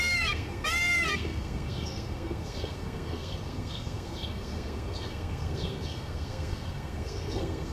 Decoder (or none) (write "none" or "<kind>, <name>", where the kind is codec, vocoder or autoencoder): codec, SNAC